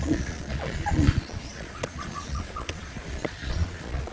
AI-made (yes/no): yes